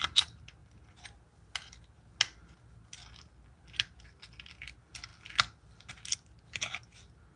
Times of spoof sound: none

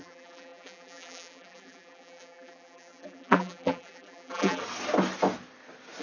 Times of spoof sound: 0.0-4.6 (vocoder, BigVGAN v2)

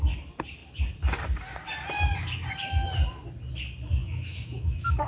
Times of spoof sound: 4.0-5.1 (autoencoder, DAC-VAE)

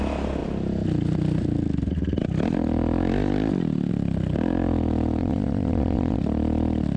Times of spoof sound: 5.2-6.2 (vocoder, Vocos)

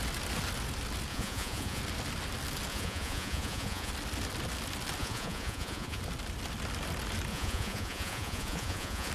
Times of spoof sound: 1.1-1.8 (vocoder, Vocos); 2.7-3.9; 5.0-6.0; 7.3-9.1